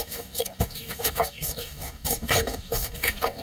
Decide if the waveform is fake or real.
fake